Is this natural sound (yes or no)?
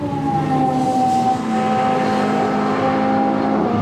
yes